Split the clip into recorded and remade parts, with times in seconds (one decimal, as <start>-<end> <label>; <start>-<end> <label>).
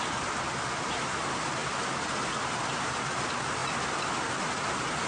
0.0-5.1 recorded